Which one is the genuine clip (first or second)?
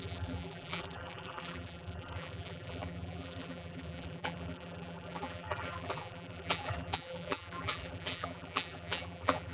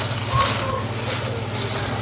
second